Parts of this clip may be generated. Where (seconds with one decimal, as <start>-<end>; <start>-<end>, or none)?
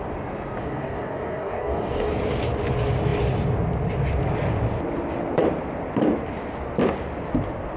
0.6-2.1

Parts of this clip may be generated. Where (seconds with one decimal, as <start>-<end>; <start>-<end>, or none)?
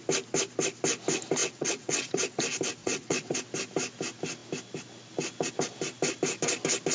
1.4-2.4; 2.8-3.4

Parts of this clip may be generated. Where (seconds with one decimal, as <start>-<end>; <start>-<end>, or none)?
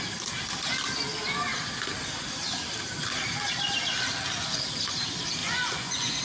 5.4-6.2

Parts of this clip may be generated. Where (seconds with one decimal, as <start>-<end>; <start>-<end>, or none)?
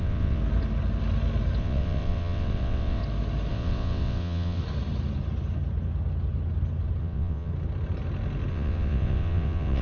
0.0-0.4; 1.6-3.0; 3.5-4.6; 7.0-7.5; 8.5-9.8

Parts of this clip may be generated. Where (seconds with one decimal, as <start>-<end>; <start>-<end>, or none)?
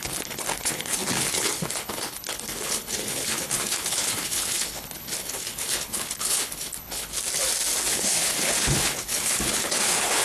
0.0-7.1; 7.9-10.2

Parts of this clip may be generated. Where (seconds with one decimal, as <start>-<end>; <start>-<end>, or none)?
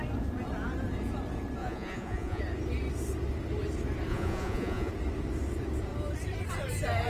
1.6-2.4; 4.1-4.9